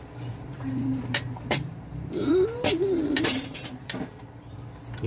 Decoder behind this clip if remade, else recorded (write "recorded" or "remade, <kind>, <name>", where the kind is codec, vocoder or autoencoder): remade, vocoder, BigVGAN v2